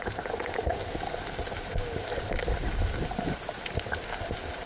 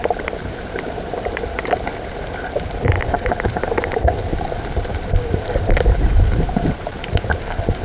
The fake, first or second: second